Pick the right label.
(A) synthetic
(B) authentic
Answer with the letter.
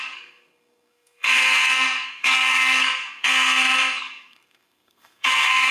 A